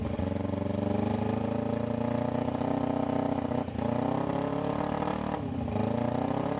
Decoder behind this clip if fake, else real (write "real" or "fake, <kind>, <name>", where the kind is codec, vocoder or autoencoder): real